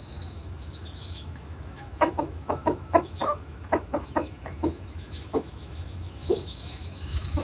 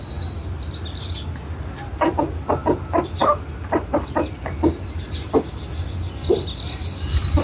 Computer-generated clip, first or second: first